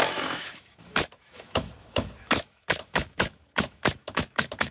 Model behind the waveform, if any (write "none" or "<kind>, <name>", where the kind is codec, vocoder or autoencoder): autoencoder, DAC-VAE